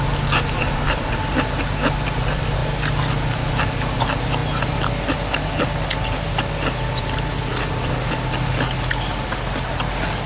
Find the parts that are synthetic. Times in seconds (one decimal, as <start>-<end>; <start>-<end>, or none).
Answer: none